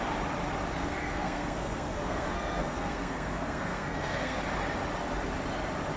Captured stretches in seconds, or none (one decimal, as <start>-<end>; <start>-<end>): 0.0-0.8; 4.4-6.0